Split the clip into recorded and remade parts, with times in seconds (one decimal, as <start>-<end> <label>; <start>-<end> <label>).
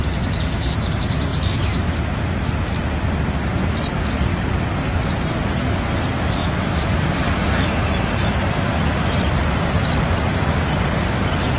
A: 0.0-1.3 remade; 1.3-4.4 recorded; 4.4-11.6 remade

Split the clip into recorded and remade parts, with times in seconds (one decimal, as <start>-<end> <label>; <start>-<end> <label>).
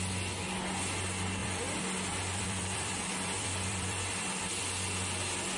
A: 0.0-1.4 recorded; 1.4-4.6 remade; 4.6-5.6 recorded